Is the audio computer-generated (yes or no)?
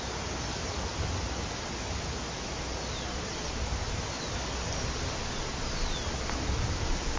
no